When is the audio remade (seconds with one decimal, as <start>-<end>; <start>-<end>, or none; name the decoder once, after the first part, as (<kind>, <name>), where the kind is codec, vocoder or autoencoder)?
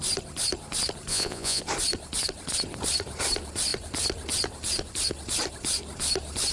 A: 1.1-1.6 (vocoder, Vocos)